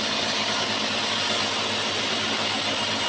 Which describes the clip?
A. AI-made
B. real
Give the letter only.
B